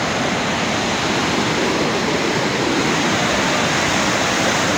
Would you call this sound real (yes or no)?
yes